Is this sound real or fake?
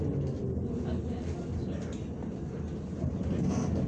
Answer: real